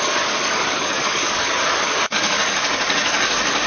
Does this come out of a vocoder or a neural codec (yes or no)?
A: yes